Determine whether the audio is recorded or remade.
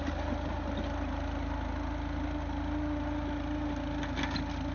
recorded